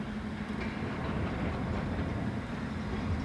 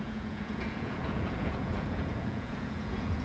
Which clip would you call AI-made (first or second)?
second